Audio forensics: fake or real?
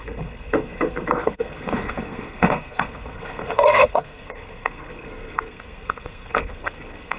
fake